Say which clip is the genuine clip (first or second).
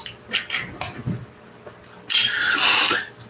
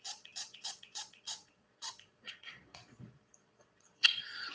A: first